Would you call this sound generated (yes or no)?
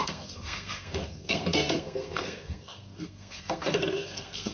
yes